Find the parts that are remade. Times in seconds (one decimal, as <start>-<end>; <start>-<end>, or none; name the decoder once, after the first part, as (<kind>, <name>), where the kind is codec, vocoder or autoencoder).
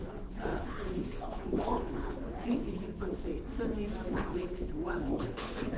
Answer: 0.0-3.3 (codec, HILCodec); 4.1-5.8